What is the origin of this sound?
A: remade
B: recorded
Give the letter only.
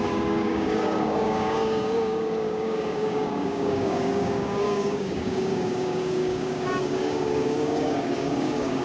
A